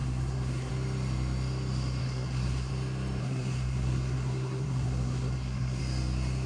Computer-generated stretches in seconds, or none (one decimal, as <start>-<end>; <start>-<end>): 0.0-0.7; 2.0-2.7; 3.2-5.8